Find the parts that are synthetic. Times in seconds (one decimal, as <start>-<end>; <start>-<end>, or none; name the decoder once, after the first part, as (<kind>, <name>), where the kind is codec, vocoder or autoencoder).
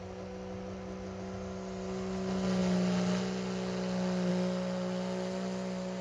none